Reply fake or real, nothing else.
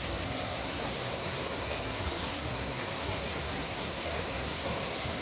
fake